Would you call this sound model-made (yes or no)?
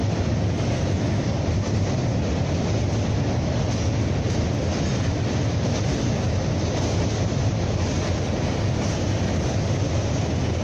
no